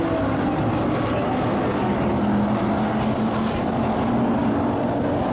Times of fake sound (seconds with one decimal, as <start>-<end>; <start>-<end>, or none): none